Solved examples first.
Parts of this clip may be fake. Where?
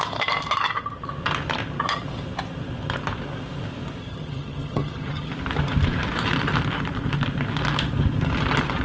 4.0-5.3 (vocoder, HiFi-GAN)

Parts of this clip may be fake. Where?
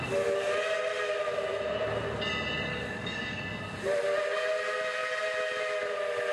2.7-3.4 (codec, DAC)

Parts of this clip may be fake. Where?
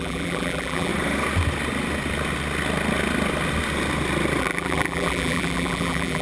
0.0-0.9 (vocoder, BigVGAN v2); 4.4-6.2